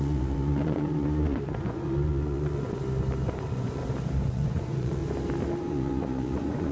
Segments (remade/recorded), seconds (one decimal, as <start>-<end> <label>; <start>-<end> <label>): 0.0-2.8 remade; 2.8-3.4 recorded; 3.4-3.8 remade; 3.8-4.3 recorded; 4.3-5.0 remade; 5.0-5.6 recorded; 5.6-6.7 remade